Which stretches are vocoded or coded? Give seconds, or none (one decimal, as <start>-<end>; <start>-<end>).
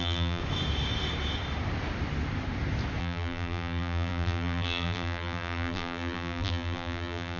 0.0-0.4; 3.0-7.4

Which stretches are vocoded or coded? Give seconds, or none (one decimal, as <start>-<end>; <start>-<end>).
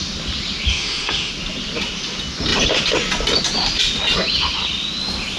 0.7-1.3